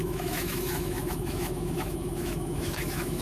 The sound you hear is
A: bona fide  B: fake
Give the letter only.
B